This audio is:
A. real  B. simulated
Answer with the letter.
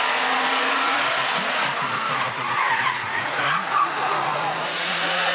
B